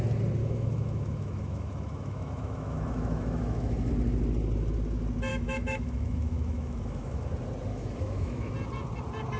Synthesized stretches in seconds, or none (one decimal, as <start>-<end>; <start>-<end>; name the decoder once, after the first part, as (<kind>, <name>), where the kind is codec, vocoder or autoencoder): 0.4-3.9 (autoencoder, DAC-VAE); 5.3-7.3; 7.7-8.5